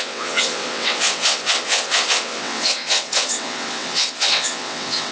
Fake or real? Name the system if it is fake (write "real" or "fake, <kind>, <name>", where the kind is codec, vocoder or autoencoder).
fake, vocoder, WaveNeXt